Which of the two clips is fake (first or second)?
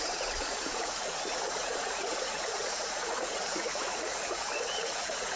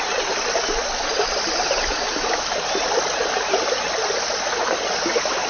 first